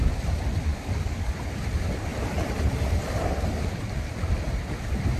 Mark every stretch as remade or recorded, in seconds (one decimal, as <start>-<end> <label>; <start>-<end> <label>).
0.0-0.7 recorded; 0.7-1.3 remade; 1.3-5.2 recorded